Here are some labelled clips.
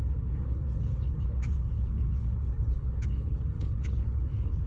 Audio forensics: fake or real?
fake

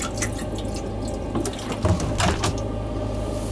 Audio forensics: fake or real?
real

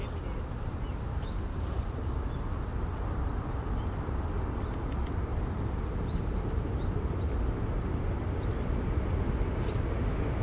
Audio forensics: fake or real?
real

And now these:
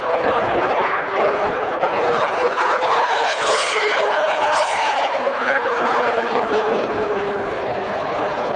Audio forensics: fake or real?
fake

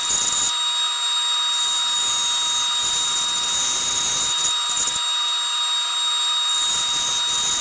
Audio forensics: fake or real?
real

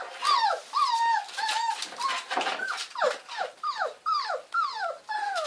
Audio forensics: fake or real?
real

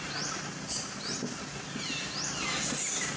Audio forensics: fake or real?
real